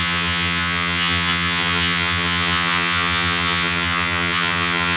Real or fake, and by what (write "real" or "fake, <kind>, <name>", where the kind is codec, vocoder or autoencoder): fake, vocoder, HiFi-GAN